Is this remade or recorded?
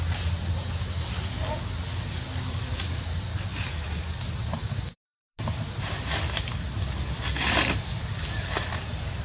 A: recorded